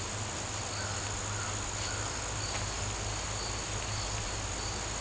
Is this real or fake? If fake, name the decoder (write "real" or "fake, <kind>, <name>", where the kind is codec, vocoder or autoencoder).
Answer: real